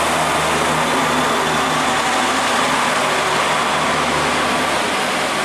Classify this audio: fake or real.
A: real